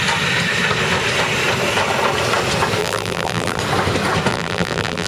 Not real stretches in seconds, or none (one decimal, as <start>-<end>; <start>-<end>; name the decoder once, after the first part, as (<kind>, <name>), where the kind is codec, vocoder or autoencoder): 2.8-3.6 (vocoder, BigVGAN v2); 4.3-5.1